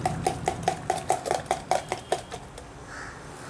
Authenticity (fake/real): real